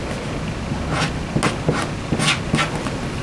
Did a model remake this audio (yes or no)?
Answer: no